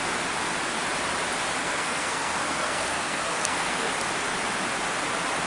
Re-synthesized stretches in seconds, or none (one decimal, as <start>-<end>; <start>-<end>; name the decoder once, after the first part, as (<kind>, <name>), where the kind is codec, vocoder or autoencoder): 1.6-3.9 (codec, SNAC)